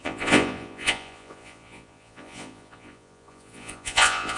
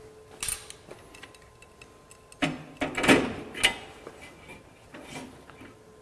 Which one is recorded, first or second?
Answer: second